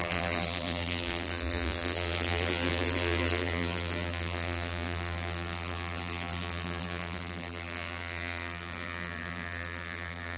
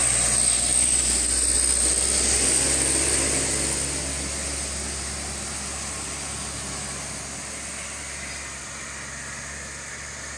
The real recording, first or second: second